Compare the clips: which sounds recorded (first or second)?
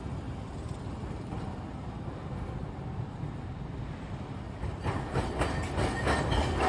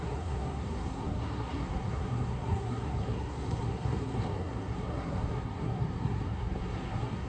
first